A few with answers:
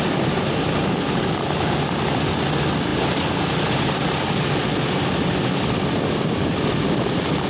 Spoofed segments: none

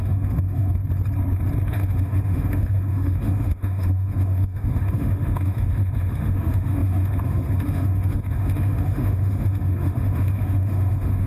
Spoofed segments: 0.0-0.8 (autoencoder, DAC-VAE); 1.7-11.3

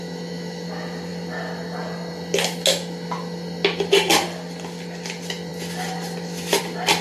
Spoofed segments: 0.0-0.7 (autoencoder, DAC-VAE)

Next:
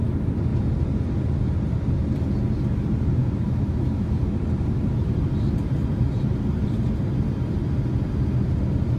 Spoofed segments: 3.2-4.4 (autoencoder, DAC-VAE)